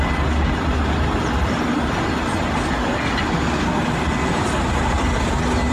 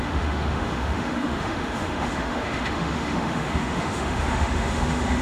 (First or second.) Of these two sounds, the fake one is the second